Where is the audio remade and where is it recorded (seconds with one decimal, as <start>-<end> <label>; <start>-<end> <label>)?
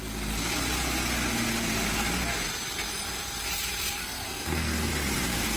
0.0-4.0 recorded; 4.0-4.9 remade; 4.9-5.6 recorded